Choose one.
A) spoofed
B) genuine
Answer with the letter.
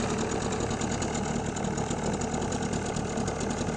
B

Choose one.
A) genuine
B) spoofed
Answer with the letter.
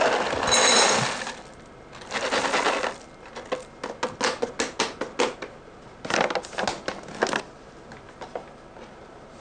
A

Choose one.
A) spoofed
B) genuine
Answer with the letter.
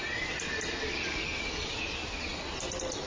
B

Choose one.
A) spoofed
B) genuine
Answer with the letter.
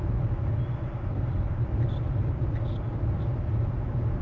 B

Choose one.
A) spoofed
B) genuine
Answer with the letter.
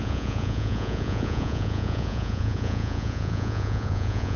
A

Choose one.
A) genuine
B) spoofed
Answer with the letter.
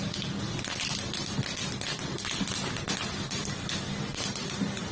A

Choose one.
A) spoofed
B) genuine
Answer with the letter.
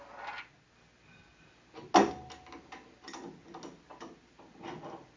B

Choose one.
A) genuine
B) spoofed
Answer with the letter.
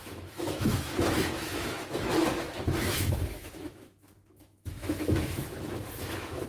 B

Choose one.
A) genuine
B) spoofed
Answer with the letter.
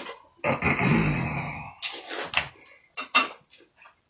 A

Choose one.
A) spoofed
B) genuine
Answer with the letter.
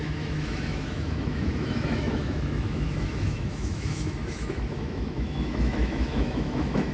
A